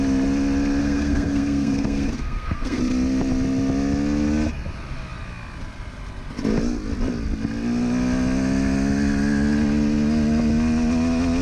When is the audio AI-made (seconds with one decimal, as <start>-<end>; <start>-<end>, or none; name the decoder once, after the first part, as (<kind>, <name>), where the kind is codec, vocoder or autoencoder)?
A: 0.8-2.8 (codec, SNAC)